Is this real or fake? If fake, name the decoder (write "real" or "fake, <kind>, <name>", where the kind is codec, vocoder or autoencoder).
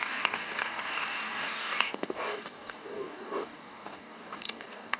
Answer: fake, codec, DAC